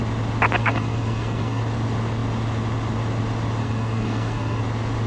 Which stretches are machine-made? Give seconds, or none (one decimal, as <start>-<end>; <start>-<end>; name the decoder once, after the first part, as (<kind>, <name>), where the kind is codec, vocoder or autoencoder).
0.6-1.6 (codec, SNAC); 3.6-4.6